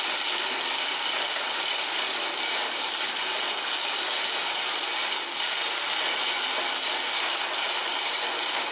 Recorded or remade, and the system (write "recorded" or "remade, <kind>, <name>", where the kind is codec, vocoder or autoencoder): recorded